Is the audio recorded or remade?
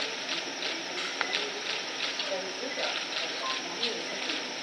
recorded